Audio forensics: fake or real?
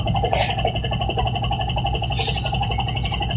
real